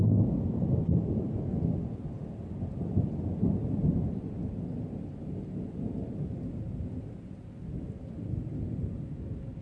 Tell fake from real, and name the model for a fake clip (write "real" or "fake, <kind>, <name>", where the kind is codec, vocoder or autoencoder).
real